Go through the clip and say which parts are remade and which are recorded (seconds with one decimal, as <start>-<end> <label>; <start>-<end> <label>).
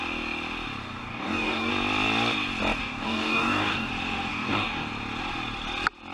0.0-0.8 recorded; 0.8-1.7 remade; 1.7-2.8 recorded; 2.8-3.9 remade; 3.9-4.3 recorded; 4.3-4.9 remade; 4.9-6.1 recorded